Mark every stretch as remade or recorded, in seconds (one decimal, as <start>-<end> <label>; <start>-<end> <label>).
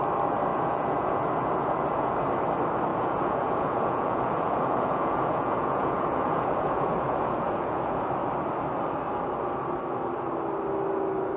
0.0-0.5 recorded; 0.5-2.2 remade; 2.2-2.9 recorded; 2.9-8.0 remade; 8.0-11.4 recorded